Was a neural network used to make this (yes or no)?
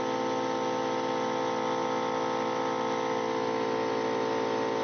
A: no